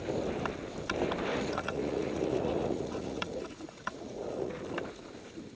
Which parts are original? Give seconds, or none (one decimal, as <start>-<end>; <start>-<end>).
0.0-1.3; 4.6-5.5